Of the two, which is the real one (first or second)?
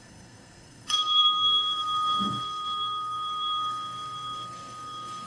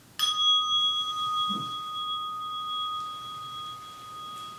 second